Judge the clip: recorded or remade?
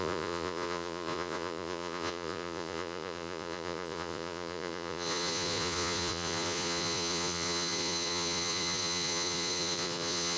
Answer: remade